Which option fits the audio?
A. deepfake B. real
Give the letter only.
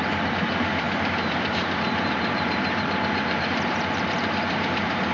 A